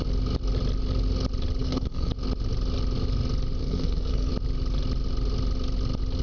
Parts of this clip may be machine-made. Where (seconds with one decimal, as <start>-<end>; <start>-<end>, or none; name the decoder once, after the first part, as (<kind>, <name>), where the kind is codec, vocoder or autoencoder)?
1.6-2.1 (codec, SNAC); 3.6-4.3